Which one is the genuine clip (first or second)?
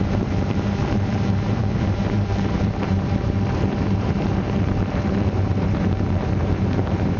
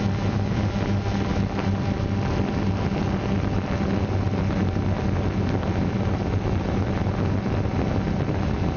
second